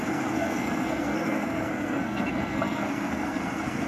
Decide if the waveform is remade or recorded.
remade